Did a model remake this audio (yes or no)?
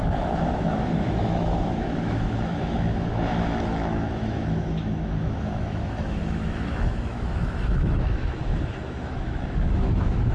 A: yes